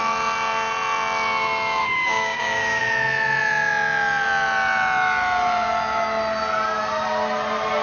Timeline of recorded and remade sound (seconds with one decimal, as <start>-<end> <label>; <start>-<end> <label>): 0.0-1.8 recorded; 1.8-2.8 remade; 2.8-7.8 recorded